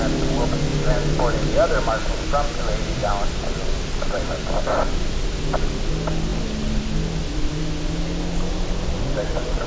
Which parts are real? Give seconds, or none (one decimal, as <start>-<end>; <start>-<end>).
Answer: 0.0-9.7